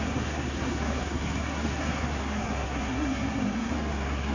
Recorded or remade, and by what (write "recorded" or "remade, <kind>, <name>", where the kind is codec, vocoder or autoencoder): remade, codec, SNAC